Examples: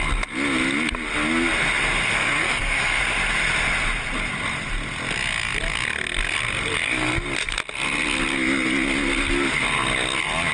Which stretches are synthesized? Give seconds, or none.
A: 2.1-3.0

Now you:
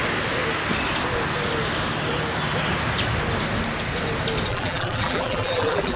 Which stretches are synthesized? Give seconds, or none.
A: 4.5-6.0

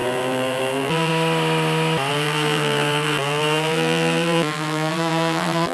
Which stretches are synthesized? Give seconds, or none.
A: 0.0-1.1; 2.1-5.7

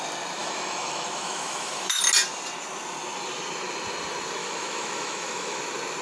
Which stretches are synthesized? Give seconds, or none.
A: 0.4-2.0; 4.4-5.6

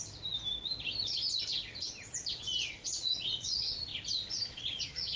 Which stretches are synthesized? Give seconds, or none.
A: 1.7-3.9; 4.5-5.2

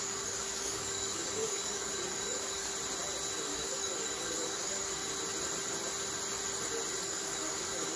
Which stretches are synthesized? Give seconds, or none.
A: 0.0-2.7; 3.4-5.0; 7.0-8.0

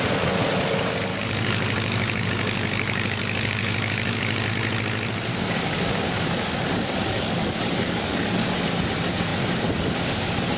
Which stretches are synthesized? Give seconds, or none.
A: 1.1-4.5; 5.3-8.5

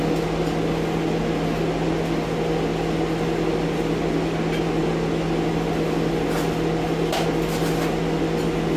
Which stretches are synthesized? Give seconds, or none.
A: none